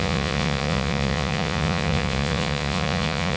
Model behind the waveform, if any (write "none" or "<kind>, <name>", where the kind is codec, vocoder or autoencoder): vocoder, Vocos